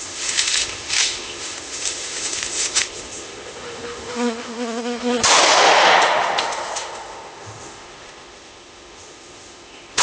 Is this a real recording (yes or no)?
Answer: no